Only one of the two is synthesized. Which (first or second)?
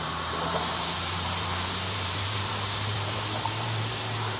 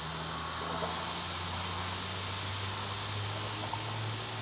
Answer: first